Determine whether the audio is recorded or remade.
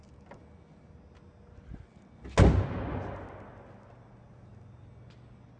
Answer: recorded